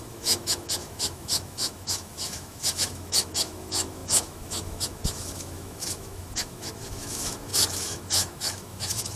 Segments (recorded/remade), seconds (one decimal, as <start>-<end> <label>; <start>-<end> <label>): 0.0-9.2 remade